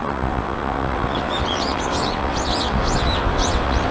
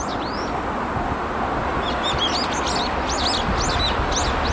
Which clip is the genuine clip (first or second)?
second